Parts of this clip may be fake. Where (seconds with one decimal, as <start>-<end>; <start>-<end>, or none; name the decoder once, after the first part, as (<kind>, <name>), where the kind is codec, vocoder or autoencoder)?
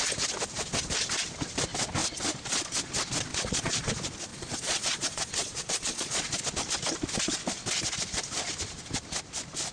3.3-3.9 (vocoder, Vocos); 4.3-6.4